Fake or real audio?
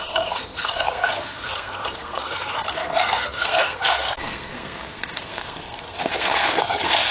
fake